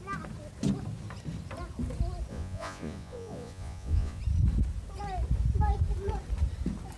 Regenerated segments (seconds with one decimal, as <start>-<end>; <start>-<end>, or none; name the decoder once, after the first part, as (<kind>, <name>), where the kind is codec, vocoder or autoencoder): 2.3-4.2 (vocoder, Vocos)